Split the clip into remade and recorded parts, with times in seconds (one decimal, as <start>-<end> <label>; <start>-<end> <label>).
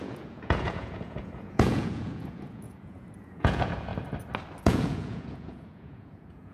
0.0-3.9 remade; 3.9-4.6 recorded; 4.6-6.5 remade